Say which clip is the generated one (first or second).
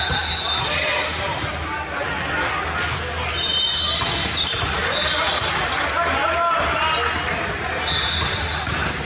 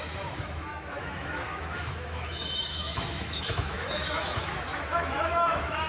second